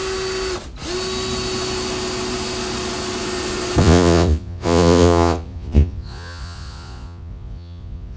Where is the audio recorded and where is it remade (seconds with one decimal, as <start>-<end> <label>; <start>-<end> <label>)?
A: 0.0-3.8 recorded; 3.8-8.2 remade